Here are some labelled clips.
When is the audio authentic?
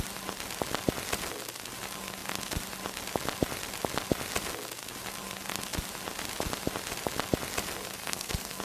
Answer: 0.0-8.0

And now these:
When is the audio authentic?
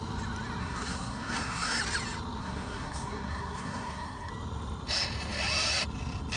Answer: 0.0-0.6; 1.8-2.4; 4.3-6.4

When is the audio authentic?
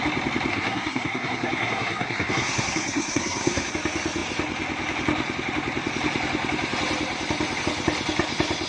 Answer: 0.0-0.5; 3.7-8.7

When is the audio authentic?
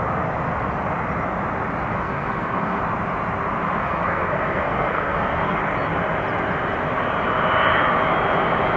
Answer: 0.0-1.9; 2.8-3.8; 5.6-8.8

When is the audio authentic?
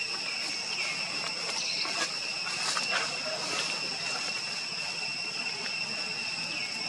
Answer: 0.0-6.9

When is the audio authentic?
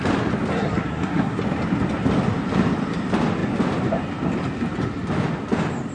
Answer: 0.0-0.5; 1.4-5.9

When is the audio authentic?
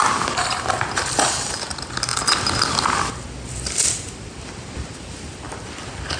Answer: 0.0-6.2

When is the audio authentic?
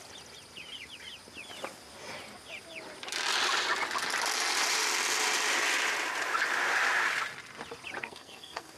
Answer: 0.0-8.0